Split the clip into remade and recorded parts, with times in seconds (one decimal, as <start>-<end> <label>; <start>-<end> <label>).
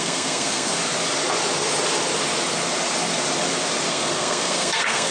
0.0-0.8 remade; 0.8-3.9 recorded; 3.9-5.1 remade